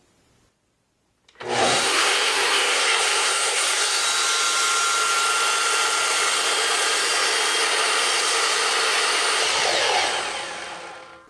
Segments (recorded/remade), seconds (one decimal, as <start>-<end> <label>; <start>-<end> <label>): 0.0-1.6 recorded; 1.6-4.0 remade; 4.0-11.3 recorded